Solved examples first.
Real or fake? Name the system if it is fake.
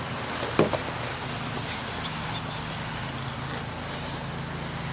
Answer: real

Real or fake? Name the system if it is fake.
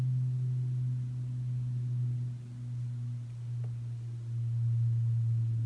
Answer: real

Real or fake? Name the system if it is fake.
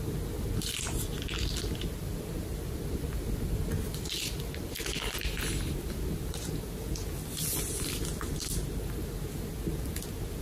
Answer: real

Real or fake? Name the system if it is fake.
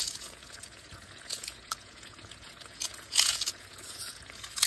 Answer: fake, vocoder, Vocos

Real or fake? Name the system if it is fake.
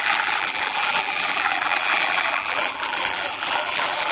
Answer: fake, vocoder, BigVGAN v2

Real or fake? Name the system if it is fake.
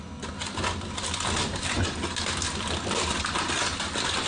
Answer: real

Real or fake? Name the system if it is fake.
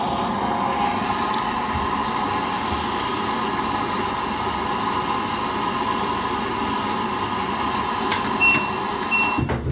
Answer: real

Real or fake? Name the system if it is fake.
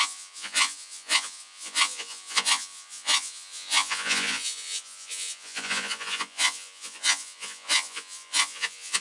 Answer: fake, vocoder, Vocos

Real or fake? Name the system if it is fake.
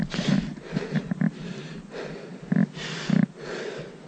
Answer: real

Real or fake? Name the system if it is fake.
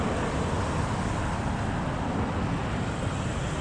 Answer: real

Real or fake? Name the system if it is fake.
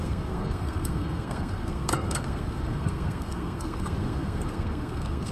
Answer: fake, codec, SNAC